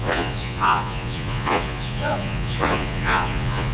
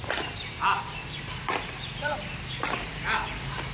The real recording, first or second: second